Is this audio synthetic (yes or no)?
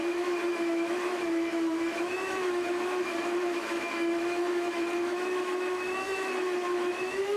yes